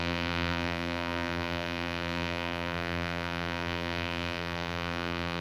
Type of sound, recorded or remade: remade